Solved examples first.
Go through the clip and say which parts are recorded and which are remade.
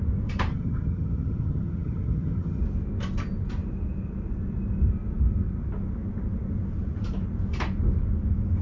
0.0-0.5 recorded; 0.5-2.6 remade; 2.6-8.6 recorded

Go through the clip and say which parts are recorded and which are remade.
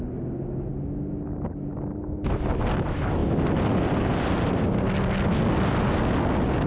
0.0-6.7 recorded